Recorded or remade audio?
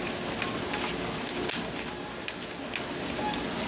recorded